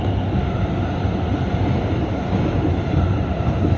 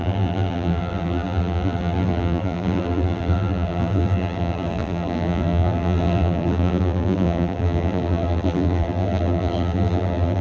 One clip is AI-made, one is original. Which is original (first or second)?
first